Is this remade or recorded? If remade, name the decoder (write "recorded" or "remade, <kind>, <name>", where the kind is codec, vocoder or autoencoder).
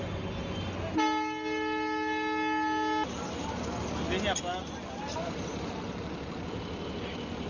recorded